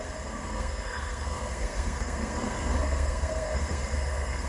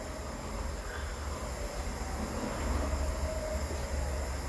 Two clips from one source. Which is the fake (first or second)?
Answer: first